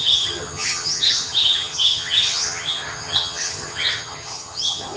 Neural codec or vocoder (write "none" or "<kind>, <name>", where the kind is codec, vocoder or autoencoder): vocoder, HiFi-GAN